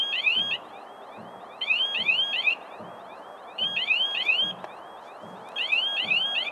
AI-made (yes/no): no